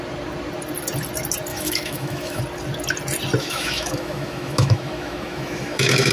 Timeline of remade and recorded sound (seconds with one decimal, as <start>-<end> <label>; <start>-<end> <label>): 0.0-1.5 recorded; 1.5-2.4 remade; 2.4-3.4 recorded; 3.4-6.1 remade